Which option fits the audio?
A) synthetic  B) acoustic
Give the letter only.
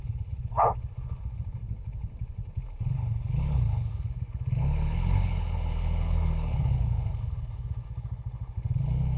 A